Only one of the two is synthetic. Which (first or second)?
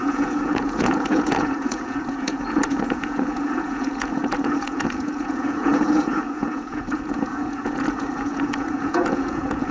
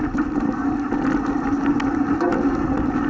first